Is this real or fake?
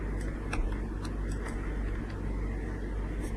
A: real